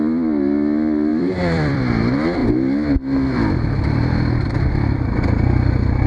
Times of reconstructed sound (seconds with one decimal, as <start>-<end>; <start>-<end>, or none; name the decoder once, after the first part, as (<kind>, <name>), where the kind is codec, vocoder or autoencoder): 1.1-1.8 (vocoder, BigVGAN v2)